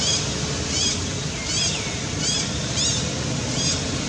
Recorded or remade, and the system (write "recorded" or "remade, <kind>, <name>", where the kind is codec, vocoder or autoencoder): recorded